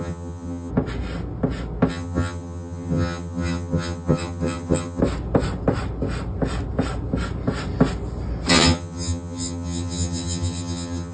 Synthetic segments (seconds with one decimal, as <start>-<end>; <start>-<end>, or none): 0.0-0.7; 1.9-5.0; 8.5-11.1